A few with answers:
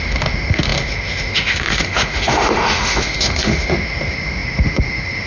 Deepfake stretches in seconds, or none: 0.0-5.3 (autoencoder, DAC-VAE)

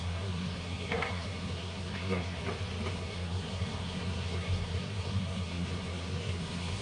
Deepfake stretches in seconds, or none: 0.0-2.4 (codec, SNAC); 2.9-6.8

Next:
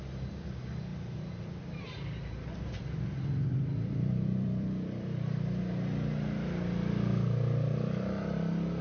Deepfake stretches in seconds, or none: 0.9-5.6 (vocoder, BigVGAN v2)